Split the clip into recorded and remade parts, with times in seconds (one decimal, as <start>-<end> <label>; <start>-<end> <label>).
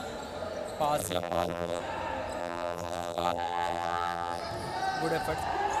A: 0.0-1.0 recorded; 1.0-1.8 remade; 1.8-2.4 recorded; 2.4-4.4 remade; 4.4-5.8 recorded